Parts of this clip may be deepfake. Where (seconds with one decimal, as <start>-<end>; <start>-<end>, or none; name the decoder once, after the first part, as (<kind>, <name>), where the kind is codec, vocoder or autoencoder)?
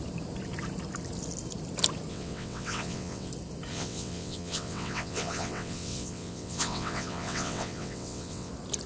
2.1-3.3 (vocoder, WaveNeXt); 3.7-8.5